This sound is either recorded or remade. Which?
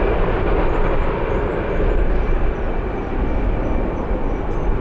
remade